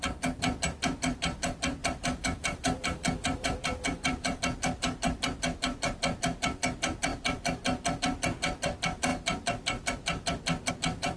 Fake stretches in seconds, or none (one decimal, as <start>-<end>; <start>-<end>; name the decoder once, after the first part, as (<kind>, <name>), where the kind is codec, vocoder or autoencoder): 1.8-4.4 (vocoder, BigVGAN v2)